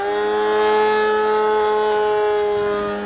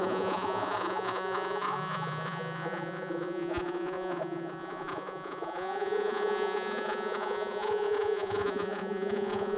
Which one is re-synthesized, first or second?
second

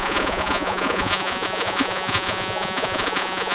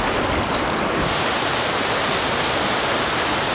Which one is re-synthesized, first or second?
first